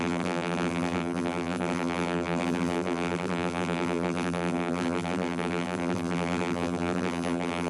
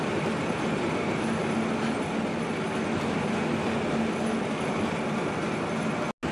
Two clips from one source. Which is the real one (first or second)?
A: second